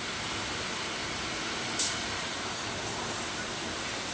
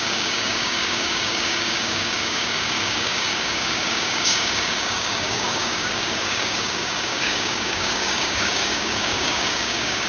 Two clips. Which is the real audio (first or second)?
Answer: first